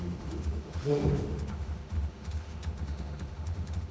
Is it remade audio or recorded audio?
remade